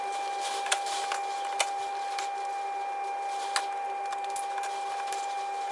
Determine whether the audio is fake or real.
real